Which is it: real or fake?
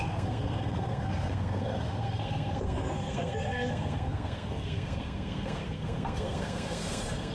fake